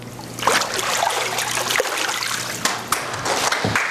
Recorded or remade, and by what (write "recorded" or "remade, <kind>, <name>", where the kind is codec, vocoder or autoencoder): recorded